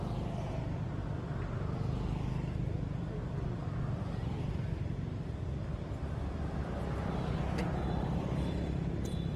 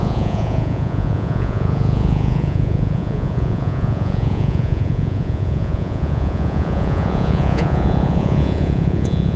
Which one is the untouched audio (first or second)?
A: first